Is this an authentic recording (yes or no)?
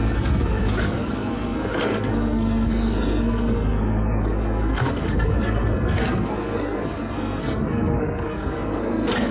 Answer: no